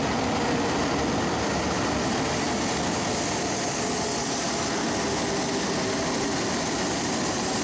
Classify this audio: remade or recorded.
recorded